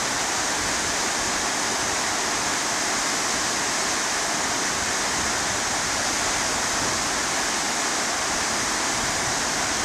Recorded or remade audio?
recorded